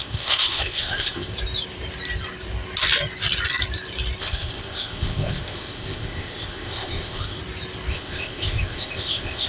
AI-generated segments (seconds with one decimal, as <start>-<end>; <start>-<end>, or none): 0.0-1.3; 4.2-7.4; 7.9-9.5